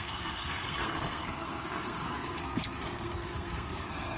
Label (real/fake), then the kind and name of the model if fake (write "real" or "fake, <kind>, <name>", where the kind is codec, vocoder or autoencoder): fake, codec, SNAC